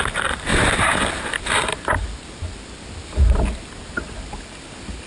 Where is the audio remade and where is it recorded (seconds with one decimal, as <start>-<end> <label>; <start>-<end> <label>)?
0.0-5.1 recorded